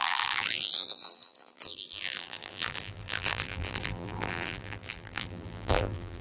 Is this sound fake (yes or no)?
yes